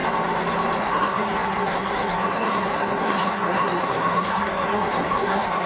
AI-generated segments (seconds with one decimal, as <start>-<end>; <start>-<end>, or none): 0.8-5.7